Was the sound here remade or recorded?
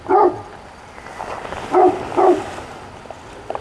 recorded